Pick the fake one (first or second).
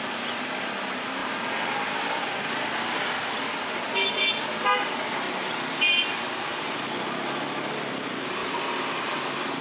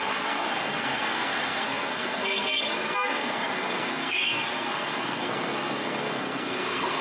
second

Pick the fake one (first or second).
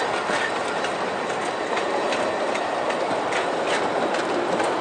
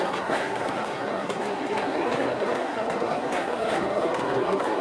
second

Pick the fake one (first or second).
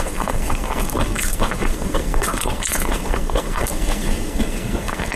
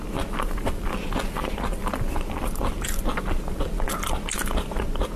first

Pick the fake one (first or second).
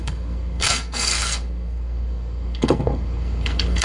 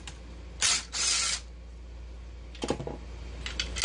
first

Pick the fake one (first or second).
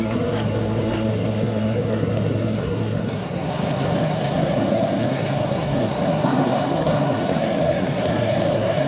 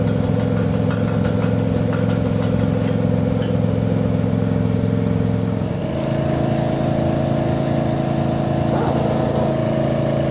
first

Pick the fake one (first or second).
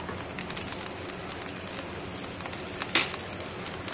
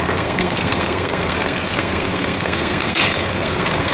second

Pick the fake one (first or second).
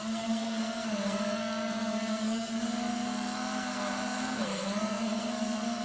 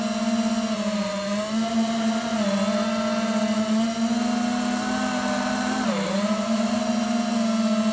first